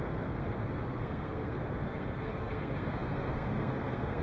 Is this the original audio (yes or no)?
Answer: no